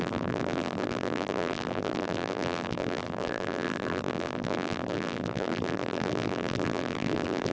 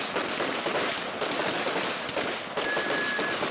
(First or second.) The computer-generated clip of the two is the first